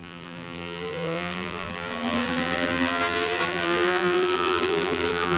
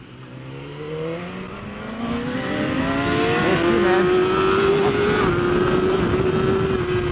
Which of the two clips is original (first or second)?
second